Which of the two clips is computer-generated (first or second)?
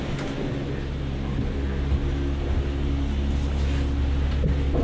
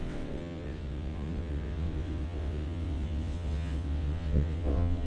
second